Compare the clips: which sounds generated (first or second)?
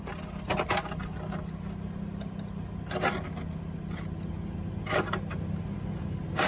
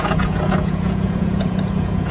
second